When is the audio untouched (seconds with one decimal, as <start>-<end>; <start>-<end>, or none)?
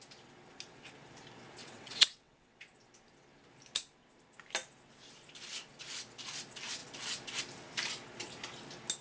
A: 0.0-1.6; 2.6-9.0